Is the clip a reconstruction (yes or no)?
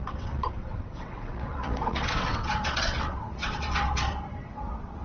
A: yes